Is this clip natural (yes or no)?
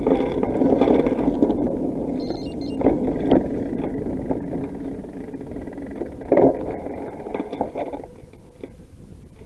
yes